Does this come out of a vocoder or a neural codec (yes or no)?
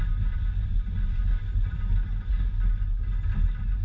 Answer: no